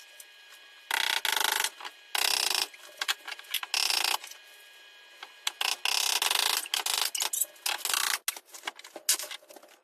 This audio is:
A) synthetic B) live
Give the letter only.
B